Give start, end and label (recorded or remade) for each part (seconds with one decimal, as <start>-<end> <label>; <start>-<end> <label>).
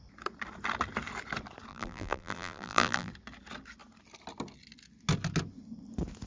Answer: 0.0-1.7 recorded; 1.7-3.1 remade; 3.1-6.3 recorded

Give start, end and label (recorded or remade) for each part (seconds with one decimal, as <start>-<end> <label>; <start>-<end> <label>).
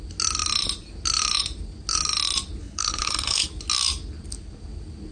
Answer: 0.0-2.6 recorded; 2.6-3.5 remade; 3.5-5.1 recorded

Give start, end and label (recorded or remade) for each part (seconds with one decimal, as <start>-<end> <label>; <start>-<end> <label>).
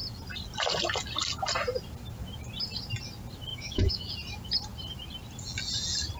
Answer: 0.0-3.5 recorded; 3.5-4.1 remade; 4.1-6.2 recorded